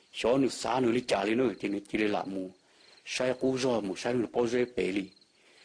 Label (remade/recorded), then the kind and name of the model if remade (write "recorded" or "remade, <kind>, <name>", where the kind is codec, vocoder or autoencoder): recorded